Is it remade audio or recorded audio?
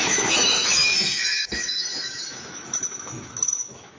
remade